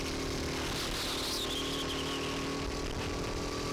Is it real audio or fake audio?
real